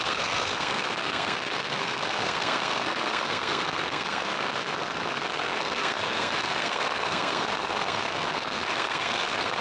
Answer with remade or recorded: remade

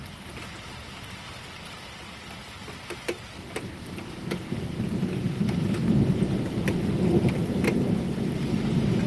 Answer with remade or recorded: recorded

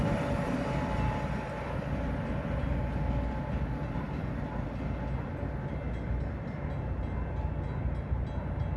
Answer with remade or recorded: recorded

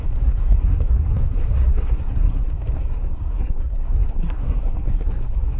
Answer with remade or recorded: remade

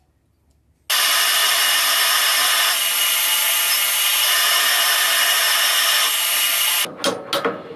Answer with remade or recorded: recorded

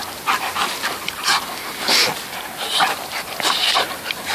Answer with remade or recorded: recorded